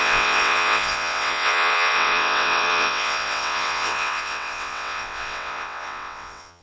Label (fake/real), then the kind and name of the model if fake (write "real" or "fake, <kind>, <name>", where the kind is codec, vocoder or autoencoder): fake, vocoder, WaveNeXt